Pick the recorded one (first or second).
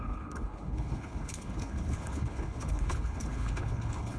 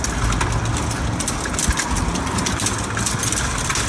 second